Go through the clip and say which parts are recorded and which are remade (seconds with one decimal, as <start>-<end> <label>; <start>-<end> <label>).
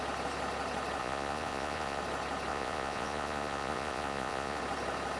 0.0-1.0 recorded; 1.0-2.0 remade; 2.0-2.5 recorded; 2.5-4.6 remade; 4.6-5.2 recorded